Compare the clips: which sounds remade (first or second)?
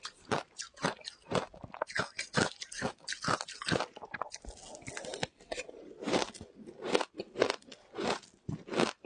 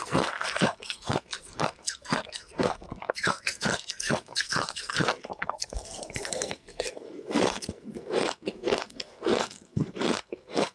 second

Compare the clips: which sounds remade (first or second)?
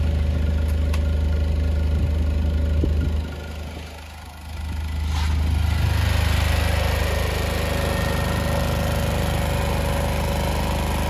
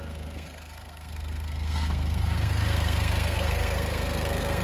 second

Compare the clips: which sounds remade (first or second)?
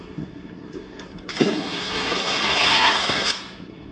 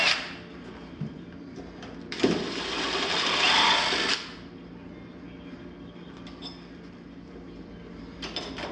first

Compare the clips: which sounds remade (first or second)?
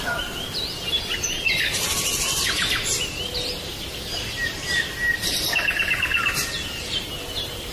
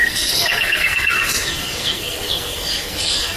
second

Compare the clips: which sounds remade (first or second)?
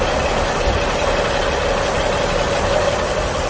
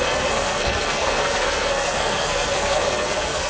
second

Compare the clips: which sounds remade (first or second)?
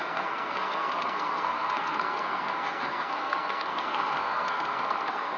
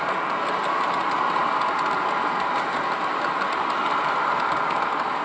first